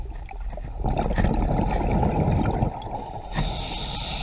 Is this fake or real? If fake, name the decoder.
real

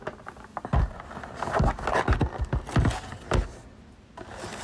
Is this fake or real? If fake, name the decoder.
real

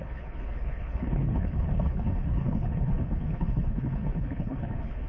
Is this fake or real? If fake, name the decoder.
fake, codec, HILCodec